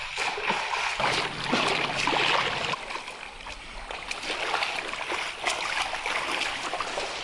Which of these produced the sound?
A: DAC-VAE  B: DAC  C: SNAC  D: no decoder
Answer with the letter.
D